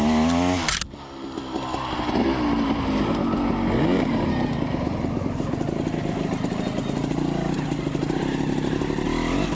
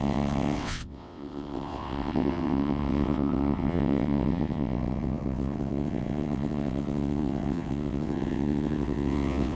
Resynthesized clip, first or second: second